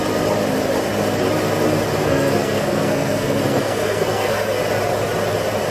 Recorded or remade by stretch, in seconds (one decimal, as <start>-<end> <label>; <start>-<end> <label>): 0.0-2.0 recorded; 2.0-4.6 remade; 4.6-5.7 recorded